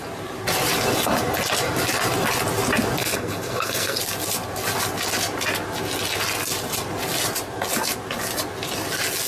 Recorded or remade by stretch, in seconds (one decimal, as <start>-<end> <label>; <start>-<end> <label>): 0.0-3.0 recorded; 3.0-4.0 remade; 4.0-9.3 recorded